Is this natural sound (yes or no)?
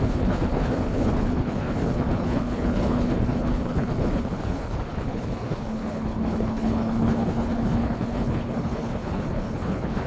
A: no